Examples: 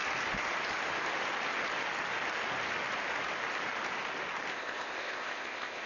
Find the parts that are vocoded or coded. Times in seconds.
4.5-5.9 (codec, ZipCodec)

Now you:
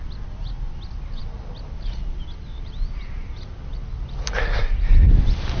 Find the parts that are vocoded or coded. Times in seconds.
none

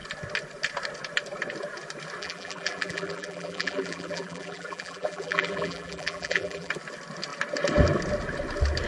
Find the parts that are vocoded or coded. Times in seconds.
2.2-6.7 (vocoder, BigVGAN v2)

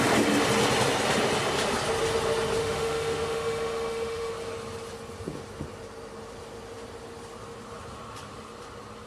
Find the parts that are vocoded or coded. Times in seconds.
2.6-4.3 (autoencoder, DAC-VAE)

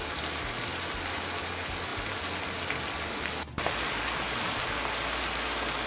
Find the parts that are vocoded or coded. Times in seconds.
none